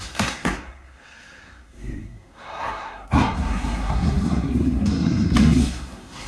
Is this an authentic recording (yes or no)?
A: no